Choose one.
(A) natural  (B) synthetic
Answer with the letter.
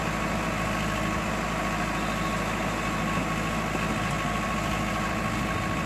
A